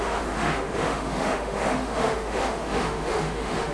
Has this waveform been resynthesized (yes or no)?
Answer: yes